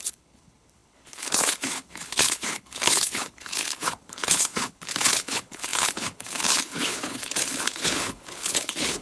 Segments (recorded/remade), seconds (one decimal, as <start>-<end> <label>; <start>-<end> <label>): 0.0-9.0 remade